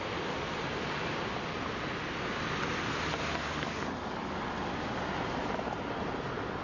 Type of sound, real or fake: real